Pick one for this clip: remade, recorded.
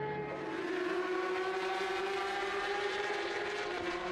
remade